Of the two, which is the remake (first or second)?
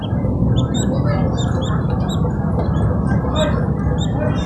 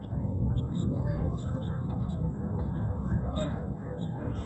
second